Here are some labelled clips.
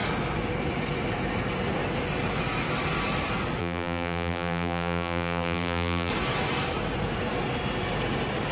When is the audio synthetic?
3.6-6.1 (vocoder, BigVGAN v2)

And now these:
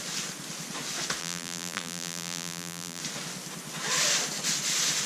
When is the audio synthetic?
1.2-3.0 (vocoder, BigVGAN v2)

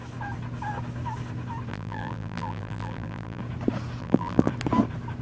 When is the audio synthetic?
1.7-3.4 (vocoder, BigVGAN v2); 4.0-4.5

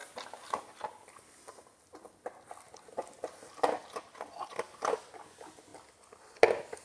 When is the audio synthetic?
none

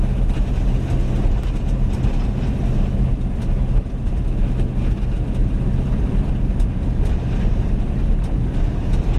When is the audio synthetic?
3.1-3.8 (vocoder, BigVGAN v2); 5.4-8.0

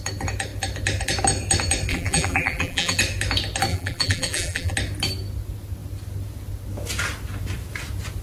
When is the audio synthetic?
1.9-3.0 (vocoder, BigVGAN v2); 3.7-4.7